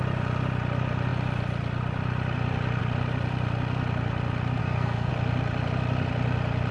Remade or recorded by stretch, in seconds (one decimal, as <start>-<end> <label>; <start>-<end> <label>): 0.0-4.6 recorded; 4.6-5.1 remade; 5.1-6.7 recorded